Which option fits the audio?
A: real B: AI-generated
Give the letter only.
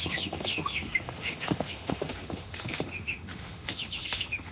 B